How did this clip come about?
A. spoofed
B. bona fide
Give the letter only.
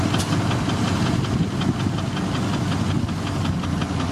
B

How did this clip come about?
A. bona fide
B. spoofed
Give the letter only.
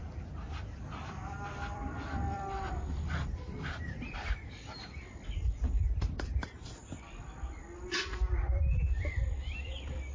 B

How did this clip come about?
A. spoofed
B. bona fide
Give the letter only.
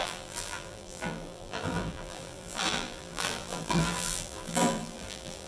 A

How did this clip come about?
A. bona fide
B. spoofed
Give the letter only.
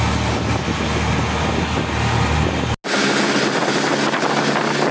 A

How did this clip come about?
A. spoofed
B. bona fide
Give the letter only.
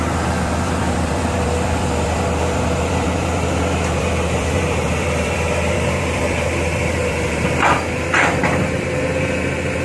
A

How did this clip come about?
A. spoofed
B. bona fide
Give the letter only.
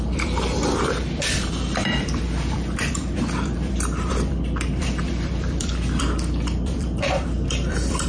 A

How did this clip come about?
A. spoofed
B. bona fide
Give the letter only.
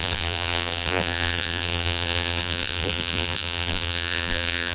A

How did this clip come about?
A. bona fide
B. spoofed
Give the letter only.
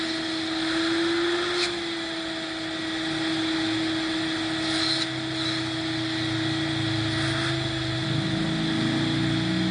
A